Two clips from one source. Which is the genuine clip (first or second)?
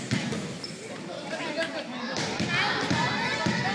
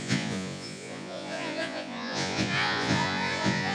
first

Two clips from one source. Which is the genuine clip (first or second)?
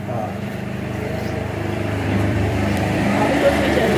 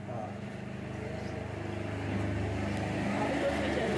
second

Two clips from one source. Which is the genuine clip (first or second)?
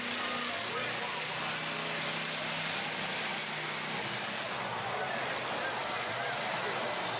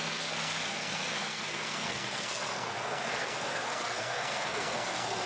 first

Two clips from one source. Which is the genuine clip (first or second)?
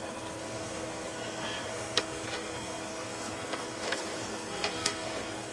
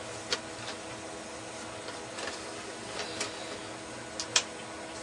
second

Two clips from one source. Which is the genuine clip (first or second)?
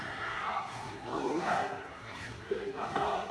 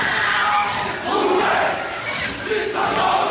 second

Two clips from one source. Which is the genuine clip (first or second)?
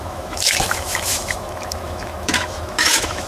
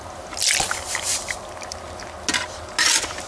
second